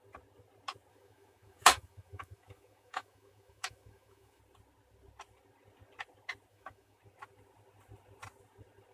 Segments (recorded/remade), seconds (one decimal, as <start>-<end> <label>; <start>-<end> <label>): 0.0-0.9 recorded; 0.9-4.4 remade; 4.4-6.5 recorded; 6.5-7.0 remade; 7.0-8.9 recorded